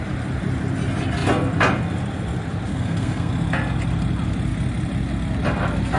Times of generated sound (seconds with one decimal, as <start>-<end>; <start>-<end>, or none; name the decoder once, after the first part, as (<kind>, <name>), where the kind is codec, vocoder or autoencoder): 2.7-3.3 (codec, SNAC)